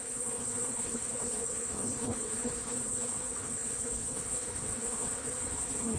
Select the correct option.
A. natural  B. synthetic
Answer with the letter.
B